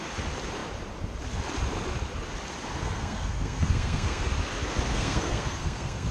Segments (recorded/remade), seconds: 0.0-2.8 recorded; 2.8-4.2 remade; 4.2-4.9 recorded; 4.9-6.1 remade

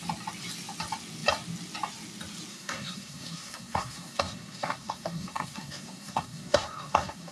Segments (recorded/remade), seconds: 0.0-2.5 recorded; 2.5-7.3 remade

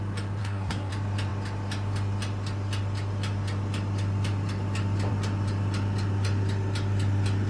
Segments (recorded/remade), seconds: 0.0-0.4 recorded; 0.4-0.9 remade; 0.9-7.5 recorded